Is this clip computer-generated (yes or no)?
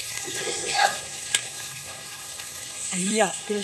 yes